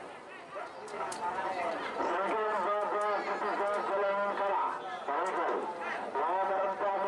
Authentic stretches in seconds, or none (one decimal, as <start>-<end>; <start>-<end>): 2.0-5.8